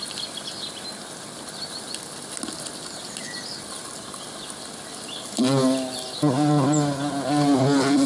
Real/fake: real